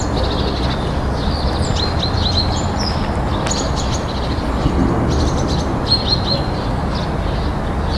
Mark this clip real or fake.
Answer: real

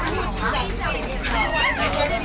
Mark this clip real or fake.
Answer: real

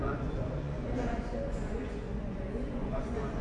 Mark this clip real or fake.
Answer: fake